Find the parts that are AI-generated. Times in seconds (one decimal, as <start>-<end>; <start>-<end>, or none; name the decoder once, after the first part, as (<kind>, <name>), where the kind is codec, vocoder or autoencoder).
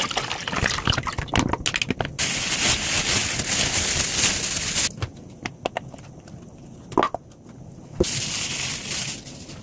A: none